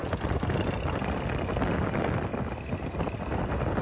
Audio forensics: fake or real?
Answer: real